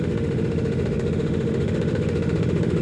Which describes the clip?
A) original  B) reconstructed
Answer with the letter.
B